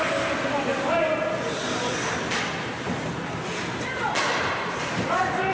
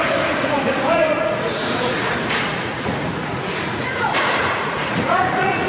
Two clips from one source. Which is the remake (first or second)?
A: second